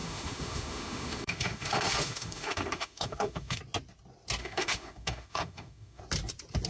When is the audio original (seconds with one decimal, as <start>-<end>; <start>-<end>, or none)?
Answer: 3.6-4.4; 6.0-6.7